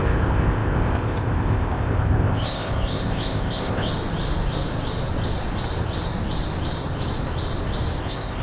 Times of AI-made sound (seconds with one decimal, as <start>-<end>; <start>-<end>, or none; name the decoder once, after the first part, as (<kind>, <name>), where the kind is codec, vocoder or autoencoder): 0.0-3.9 (codec, ZipCodec); 8.0-8.4